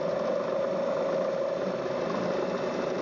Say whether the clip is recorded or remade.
recorded